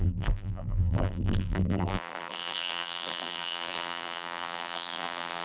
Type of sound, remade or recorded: remade